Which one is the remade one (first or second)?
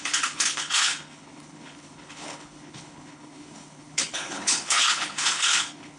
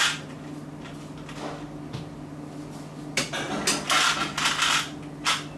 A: first